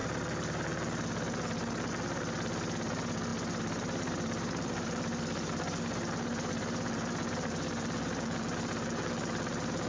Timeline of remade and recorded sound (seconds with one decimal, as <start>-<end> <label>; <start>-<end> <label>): 0.0-3.3 recorded; 3.3-7.5 remade; 7.5-9.9 recorded